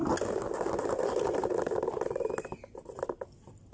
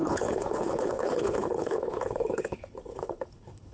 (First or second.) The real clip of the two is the first